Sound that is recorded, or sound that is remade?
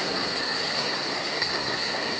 remade